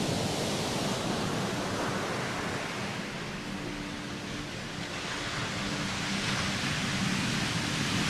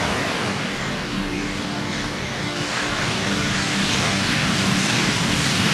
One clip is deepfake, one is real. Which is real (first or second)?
first